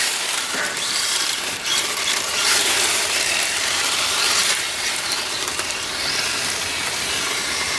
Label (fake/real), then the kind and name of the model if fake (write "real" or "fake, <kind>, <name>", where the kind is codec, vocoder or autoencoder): fake, vocoder, BigVGAN v2